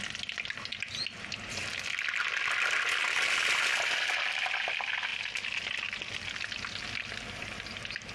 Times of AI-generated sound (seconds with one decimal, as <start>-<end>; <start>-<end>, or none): none